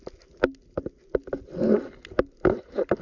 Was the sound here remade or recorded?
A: recorded